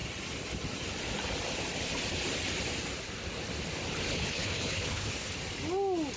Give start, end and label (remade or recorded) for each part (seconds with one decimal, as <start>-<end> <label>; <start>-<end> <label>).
0.0-4.1 recorded; 4.1-5.3 remade; 5.3-6.2 recorded